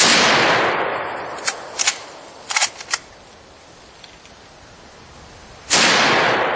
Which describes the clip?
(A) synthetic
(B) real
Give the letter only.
B